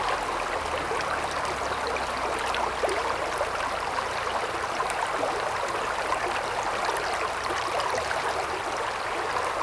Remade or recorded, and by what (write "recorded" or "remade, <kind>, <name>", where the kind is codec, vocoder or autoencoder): recorded